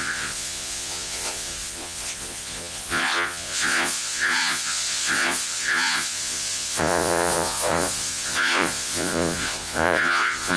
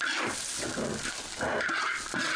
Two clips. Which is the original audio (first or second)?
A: second